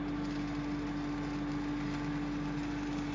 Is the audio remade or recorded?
recorded